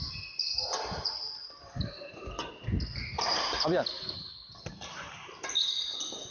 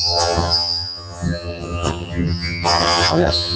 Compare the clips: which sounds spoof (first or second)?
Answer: second